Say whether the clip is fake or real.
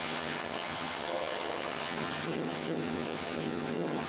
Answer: fake